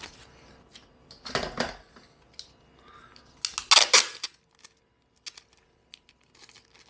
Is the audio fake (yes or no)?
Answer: no